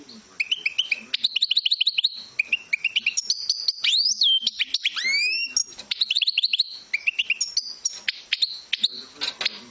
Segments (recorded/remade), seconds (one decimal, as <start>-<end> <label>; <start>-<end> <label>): 0.0-5.6 recorded; 5.6-6.2 remade; 6.2-9.7 recorded